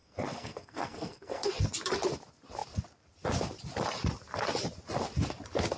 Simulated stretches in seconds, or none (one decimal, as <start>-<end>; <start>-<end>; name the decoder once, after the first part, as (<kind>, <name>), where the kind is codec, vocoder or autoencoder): 0.0-1.5 (codec, SNAC)